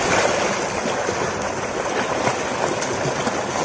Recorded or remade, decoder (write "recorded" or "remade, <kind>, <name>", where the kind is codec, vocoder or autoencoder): recorded